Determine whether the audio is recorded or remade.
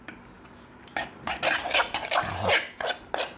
recorded